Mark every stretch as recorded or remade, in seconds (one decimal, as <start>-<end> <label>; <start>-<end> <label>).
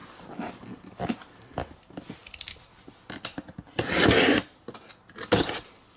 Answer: 0.0-6.0 recorded